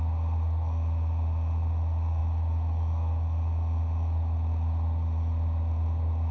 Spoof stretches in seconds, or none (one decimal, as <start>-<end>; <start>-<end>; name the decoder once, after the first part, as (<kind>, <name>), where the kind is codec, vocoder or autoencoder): none